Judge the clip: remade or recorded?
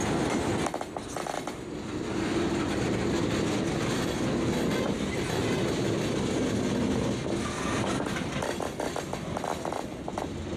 recorded